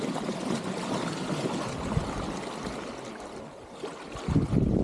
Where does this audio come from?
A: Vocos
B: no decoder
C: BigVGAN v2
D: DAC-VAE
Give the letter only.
B